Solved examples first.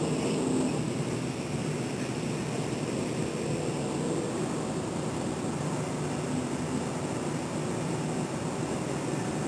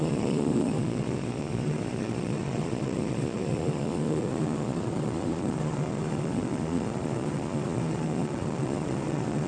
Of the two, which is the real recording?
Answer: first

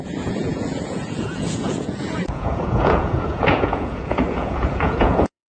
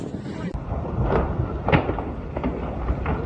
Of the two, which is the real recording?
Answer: second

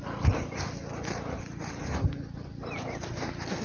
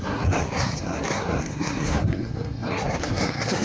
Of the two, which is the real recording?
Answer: first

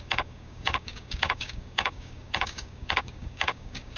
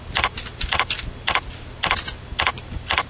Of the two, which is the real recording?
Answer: second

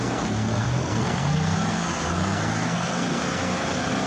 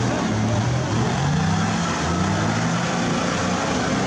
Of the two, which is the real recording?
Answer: second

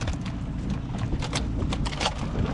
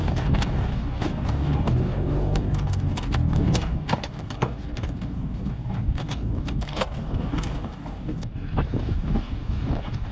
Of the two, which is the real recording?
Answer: first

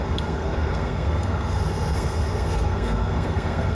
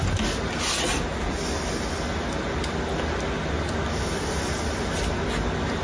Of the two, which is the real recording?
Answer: second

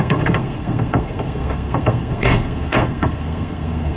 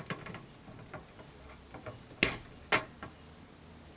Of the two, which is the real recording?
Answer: second